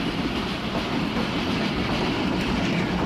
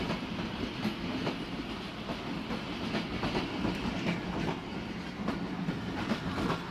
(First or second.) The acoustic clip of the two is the second